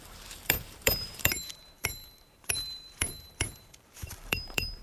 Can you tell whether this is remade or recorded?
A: remade